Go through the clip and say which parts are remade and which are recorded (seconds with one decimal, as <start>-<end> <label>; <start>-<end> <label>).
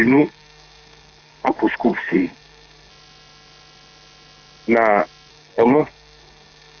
0.0-2.9 remade; 2.9-5.3 recorded; 5.3-6.8 remade